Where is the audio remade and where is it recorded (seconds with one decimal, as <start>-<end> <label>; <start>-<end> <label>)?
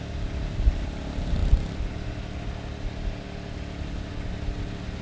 0.0-5.0 recorded